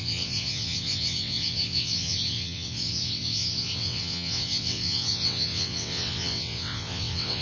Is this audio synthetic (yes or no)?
yes